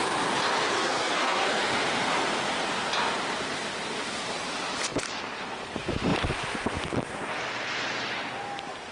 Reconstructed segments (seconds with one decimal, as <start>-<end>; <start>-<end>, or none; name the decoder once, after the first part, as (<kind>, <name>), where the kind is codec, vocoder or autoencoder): 0.7-1.6 (codec, SNAC)